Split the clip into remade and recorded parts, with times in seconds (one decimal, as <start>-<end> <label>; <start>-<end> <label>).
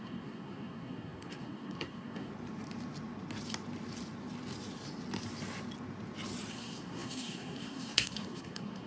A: 0.0-2.3 remade; 2.3-6.5 recorded; 6.5-8.9 remade